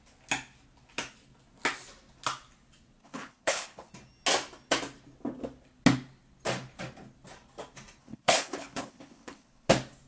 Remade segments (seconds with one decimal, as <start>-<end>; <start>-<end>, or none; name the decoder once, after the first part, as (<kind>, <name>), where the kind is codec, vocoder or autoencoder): 3.0-3.9 (codec, HILCodec); 8.0-9.7